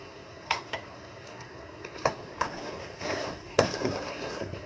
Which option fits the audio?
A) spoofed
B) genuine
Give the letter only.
A